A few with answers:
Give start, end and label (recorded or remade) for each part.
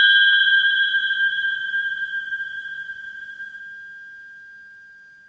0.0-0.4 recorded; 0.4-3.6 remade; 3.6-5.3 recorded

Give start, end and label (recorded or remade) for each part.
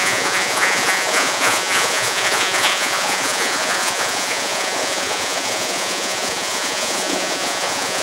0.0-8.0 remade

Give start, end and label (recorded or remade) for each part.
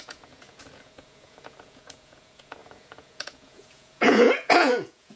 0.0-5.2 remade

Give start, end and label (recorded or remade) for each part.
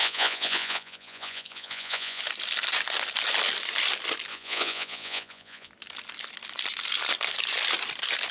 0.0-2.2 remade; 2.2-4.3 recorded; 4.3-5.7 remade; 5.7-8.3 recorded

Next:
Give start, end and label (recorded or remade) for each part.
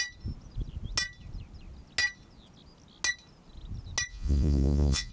0.0-4.1 recorded; 4.1-5.1 remade